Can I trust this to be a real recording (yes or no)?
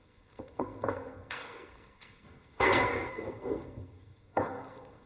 no